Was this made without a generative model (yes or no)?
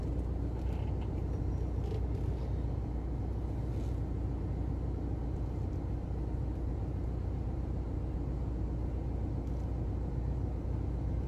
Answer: yes